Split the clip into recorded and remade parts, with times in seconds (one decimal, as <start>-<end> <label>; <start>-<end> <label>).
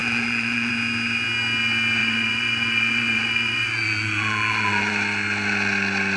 0.0-0.7 remade; 0.7-2.0 recorded; 2.0-4.9 remade; 4.9-6.2 recorded